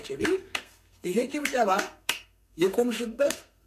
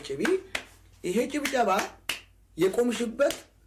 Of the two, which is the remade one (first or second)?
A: first